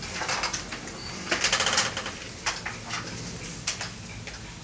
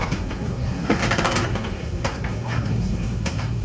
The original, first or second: first